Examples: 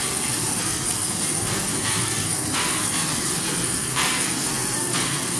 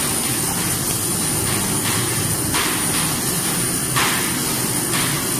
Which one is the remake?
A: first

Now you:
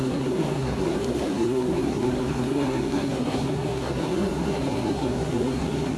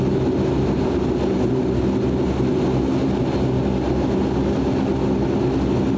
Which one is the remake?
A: first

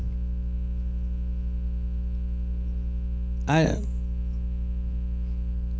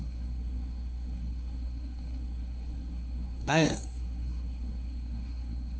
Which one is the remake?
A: second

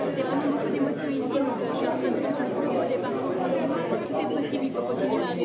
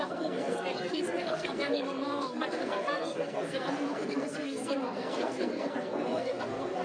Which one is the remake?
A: second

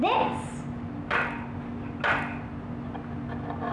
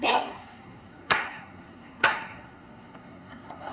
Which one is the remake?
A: second